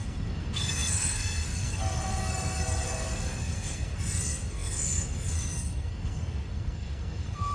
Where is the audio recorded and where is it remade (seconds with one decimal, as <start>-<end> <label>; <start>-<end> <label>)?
0.0-7.5 remade